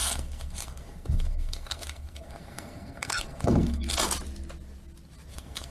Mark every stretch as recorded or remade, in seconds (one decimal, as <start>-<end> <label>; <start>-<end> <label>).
0.0-4.0 remade; 4.0-5.3 recorded; 5.3-5.7 remade